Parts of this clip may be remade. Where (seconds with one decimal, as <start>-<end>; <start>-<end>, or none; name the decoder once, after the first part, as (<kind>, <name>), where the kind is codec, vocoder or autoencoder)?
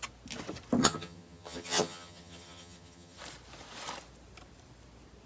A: 0.8-3.2 (vocoder, HiFi-GAN)